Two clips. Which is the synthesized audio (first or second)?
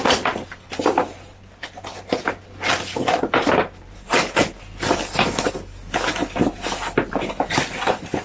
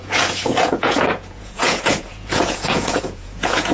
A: second